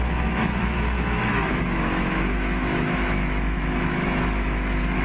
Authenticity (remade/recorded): remade